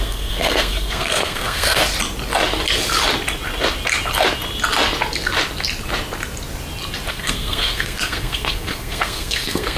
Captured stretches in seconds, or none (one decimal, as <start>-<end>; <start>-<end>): 1.8-7.1